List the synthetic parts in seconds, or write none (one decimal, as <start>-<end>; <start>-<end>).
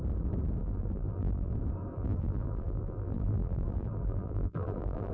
0.6-1.5; 1.9-5.1